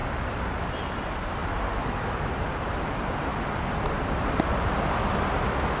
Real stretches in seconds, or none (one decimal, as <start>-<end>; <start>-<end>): none

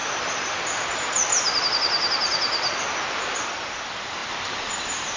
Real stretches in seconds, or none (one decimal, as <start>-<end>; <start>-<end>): 0.0-3.1; 4.2-4.7

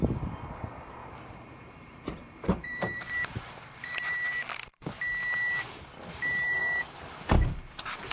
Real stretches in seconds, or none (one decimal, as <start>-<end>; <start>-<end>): 0.0-1.0; 4.3-6.0; 6.6-8.1

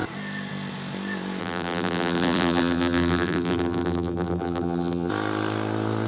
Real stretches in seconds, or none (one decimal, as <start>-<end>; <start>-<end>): 0.0-1.4; 5.1-6.1

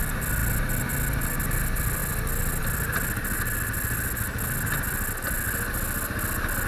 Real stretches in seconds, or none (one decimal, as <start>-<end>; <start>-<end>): 0.0-6.7